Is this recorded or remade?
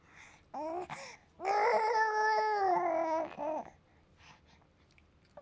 recorded